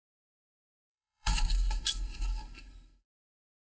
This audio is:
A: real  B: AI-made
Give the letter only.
B